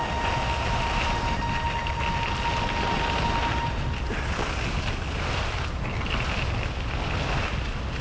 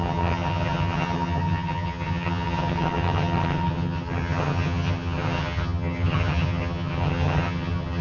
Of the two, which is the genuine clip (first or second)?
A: first